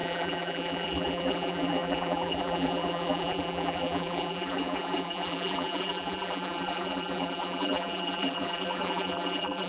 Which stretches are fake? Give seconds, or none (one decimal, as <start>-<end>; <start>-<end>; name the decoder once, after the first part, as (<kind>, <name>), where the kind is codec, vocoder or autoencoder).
0.0-9.7 (vocoder, BigVGAN v2)

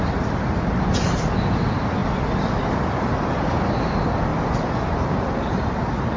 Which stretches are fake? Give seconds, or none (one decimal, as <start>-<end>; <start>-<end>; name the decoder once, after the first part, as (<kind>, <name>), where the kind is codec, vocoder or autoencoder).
4.3-6.2 (vocoder, BigVGAN v2)